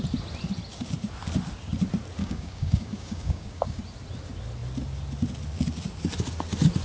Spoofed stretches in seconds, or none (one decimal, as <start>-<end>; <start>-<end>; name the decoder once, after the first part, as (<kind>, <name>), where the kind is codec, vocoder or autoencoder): 2.2-3.8 (codec, DAC)